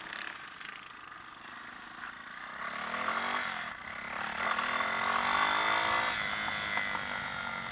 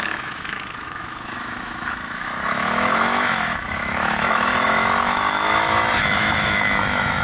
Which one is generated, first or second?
second